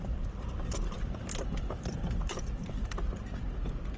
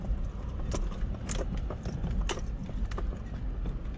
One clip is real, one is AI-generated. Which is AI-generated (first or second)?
first